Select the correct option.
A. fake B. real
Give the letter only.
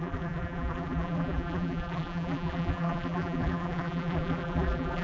A